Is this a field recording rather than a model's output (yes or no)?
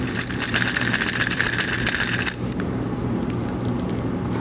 yes